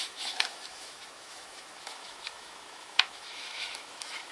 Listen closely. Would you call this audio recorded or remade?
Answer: remade